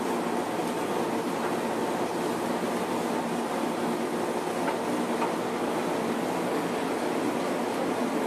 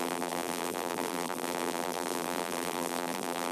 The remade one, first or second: second